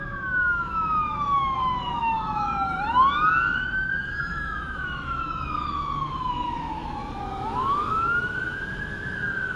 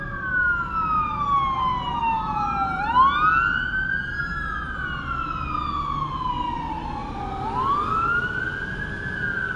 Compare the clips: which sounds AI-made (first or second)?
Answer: first